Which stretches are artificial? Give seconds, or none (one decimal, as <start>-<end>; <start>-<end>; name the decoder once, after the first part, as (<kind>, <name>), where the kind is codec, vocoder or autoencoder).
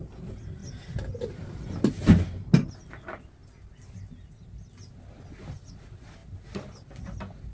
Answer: none